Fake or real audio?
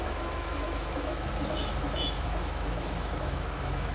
fake